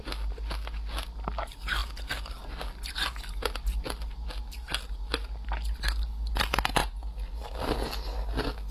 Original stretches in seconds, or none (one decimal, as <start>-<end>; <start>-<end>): 0.0-8.7